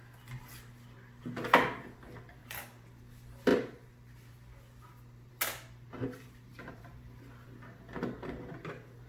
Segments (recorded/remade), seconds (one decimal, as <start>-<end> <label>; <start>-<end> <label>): 0.0-2.4 recorded; 2.4-3.0 remade; 3.0-6.5 recorded; 6.5-7.2 remade; 7.2-9.1 recorded